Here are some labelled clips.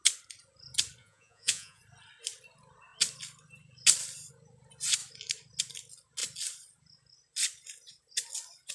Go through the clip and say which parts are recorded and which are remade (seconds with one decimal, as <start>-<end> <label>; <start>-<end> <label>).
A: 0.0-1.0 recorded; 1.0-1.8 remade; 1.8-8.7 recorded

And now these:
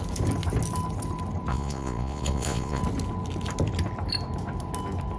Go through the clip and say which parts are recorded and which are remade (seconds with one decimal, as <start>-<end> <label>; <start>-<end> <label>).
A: 0.0-1.5 recorded; 1.5-2.8 remade; 2.8-5.2 recorded

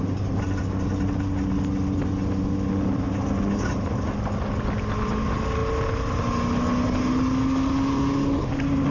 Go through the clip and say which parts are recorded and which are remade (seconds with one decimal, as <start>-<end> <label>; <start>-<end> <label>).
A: 0.0-8.9 recorded

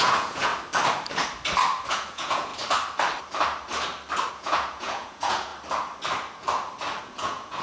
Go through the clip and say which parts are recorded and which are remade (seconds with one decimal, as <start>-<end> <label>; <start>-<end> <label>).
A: 0.0-0.5 remade; 0.5-1.9 recorded; 1.9-2.5 remade; 2.5-4.3 recorded; 4.3-5.5 remade; 5.5-7.0 recorded; 7.0-7.6 remade